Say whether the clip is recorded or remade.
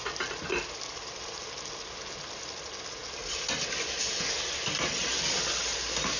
recorded